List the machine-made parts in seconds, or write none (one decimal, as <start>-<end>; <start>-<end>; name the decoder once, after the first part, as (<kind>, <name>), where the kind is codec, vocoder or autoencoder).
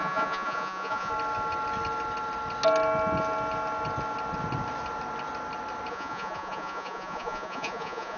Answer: 0.0-1.1 (vocoder, Vocos); 5.9-8.2